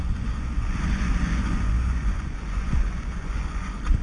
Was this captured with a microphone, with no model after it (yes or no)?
no